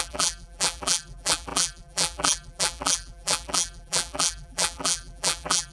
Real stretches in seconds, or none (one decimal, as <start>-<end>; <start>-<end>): none